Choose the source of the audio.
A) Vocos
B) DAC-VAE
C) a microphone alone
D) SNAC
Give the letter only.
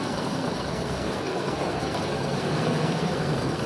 D